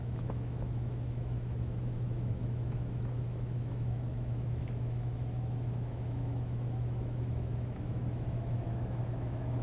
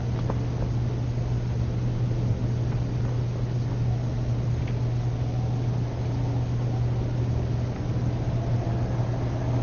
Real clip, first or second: second